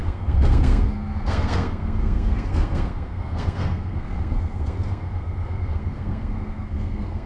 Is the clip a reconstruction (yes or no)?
yes